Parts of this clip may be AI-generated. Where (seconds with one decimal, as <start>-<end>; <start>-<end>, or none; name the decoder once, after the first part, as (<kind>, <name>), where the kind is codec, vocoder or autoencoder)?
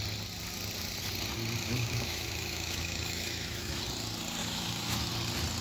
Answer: 1.6-3.8 (autoencoder, DAC-VAE); 4.4-5.1